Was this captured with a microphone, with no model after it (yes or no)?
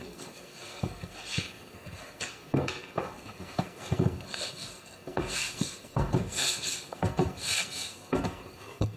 no